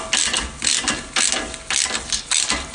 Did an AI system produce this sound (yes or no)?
no